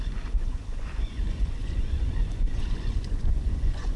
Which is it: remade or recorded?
remade